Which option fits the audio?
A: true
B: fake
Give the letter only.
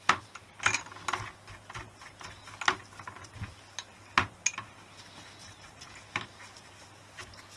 A